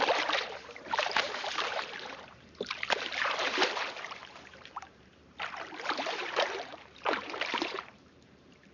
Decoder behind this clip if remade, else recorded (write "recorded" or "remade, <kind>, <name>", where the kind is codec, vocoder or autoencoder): remade, vocoder, BigVGAN v2